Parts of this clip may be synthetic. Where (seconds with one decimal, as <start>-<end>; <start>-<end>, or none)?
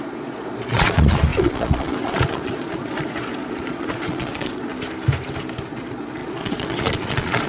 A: 0.0-4.7; 5.7-7.5